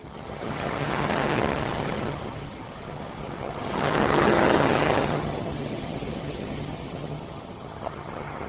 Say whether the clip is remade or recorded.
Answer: remade